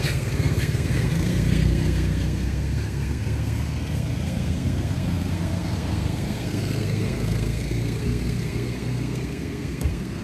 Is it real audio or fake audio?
fake